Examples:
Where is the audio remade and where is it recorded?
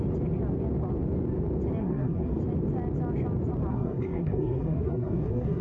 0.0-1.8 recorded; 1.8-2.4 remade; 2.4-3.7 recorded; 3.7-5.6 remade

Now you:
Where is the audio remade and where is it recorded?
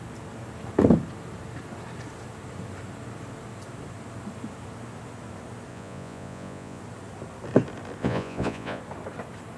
0.0-5.7 recorded; 5.7-6.8 remade; 6.8-8.0 recorded; 8.0-8.8 remade; 8.8-9.6 recorded